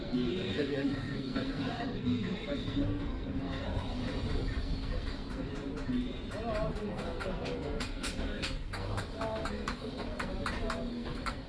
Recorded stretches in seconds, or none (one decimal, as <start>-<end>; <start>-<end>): 4.0-4.6; 5.5-6.7; 10.3-10.9